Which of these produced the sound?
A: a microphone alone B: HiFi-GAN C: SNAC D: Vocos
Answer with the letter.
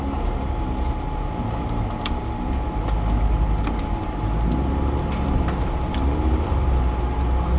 A